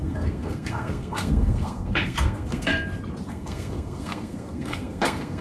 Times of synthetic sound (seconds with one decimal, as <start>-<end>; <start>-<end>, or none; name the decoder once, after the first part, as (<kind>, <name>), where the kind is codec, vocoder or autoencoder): 0.0-2.7 (codec, SNAC); 3.3-5.4

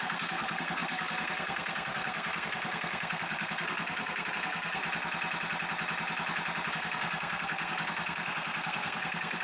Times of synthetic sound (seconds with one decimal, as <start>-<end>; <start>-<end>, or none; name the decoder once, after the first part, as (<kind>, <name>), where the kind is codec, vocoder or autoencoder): 0.0-4.8 (codec, SNAC); 6.7-9.4

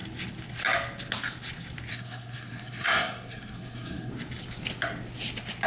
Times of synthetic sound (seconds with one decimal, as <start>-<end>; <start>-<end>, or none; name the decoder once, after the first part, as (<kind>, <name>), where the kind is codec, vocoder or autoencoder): 1.9-4.1 (codec, SNAC)

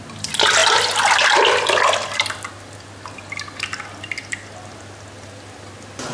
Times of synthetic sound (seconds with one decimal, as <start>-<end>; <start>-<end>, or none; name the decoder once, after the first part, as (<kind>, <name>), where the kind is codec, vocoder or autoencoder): none

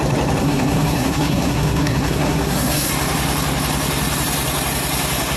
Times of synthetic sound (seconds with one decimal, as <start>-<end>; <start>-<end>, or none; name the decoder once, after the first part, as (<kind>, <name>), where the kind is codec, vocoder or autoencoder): 0.4-2.9 (codec, SNAC)